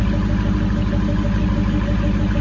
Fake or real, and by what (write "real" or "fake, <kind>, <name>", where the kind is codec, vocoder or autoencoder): real